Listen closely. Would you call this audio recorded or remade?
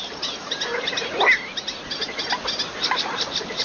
recorded